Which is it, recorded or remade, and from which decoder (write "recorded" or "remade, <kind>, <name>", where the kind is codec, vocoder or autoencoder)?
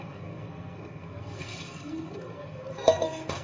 remade, codec, SNAC